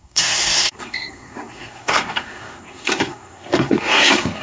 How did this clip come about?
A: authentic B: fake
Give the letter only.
B